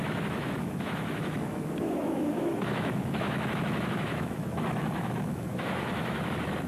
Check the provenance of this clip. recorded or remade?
remade